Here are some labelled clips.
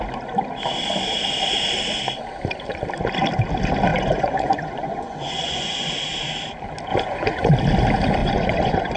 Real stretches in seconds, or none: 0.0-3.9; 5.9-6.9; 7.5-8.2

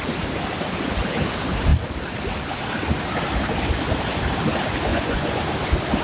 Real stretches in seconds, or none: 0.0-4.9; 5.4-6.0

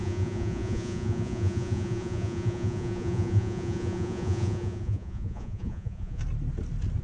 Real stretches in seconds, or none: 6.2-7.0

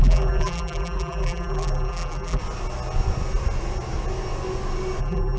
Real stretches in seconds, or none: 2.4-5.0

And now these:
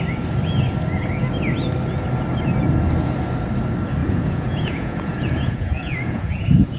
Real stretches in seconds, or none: 0.0-4.0